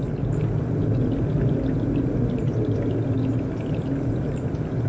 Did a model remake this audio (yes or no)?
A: no